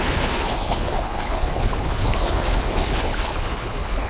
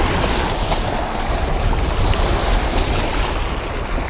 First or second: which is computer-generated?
first